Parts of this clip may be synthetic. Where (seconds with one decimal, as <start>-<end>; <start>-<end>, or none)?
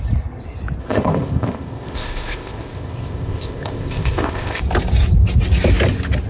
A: 0.8-4.6